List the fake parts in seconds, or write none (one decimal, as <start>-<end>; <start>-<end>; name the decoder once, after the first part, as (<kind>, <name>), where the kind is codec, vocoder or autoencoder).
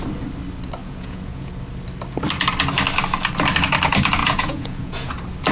0.8-1.5 (vocoder, Vocos); 4.2-5.1